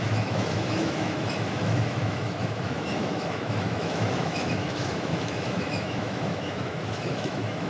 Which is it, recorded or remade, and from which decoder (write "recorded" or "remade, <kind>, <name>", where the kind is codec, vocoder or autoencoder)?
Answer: remade, autoencoder, DAC-VAE